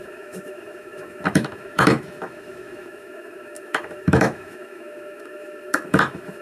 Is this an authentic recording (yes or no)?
no